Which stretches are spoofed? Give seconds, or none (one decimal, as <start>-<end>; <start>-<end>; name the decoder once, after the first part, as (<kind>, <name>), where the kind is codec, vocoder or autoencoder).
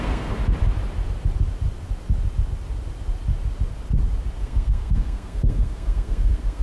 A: 0.0-0.4 (codec, SNAC); 4.4-6.6